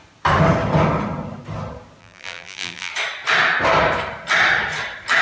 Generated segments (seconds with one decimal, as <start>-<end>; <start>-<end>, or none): 2.0-2.9